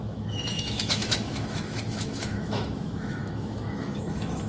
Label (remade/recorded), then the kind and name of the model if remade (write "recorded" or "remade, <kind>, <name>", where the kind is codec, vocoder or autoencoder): remade, autoencoder, DAC-VAE